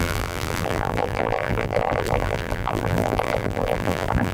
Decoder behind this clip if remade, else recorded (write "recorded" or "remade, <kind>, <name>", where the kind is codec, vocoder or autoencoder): remade, vocoder, BigVGAN v2